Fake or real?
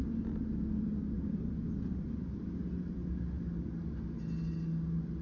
real